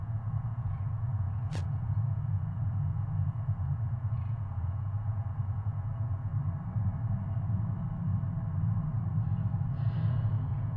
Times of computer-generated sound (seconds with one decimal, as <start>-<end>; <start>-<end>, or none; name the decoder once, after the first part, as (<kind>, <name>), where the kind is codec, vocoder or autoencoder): 0.0-6.3 (vocoder, Vocos); 10.1-10.8